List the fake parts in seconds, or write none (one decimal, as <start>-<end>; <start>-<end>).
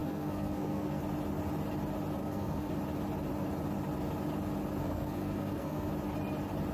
0.0-1.0; 2.2-2.7; 4.8-5.9